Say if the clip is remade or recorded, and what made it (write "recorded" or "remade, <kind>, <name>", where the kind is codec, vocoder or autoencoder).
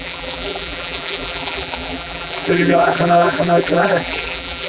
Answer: remade, vocoder, BigVGAN v2